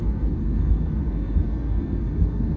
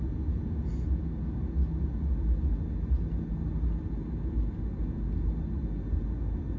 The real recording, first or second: second